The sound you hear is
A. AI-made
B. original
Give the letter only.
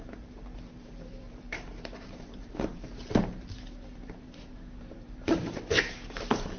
A